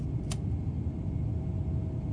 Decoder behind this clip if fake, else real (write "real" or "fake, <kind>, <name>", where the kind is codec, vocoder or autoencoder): real